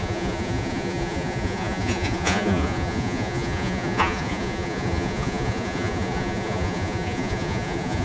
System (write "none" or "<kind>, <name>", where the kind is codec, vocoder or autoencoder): vocoder, Vocos